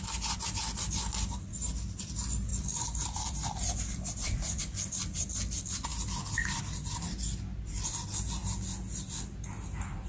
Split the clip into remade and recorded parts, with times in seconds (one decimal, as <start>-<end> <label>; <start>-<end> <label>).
0.0-2.5 recorded; 2.5-4.6 remade; 4.6-10.1 recorded